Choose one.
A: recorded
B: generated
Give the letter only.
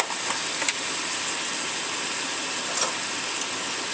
A